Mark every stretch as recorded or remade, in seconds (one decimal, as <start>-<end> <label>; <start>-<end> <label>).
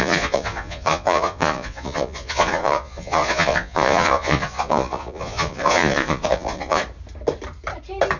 0.0-6.8 remade; 6.8-8.2 recorded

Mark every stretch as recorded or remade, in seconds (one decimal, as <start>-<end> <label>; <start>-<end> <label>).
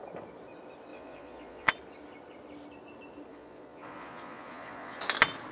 0.0-0.9 recorded; 0.9-1.7 remade; 1.7-3.3 recorded; 3.3-5.0 remade; 5.0-5.5 recorded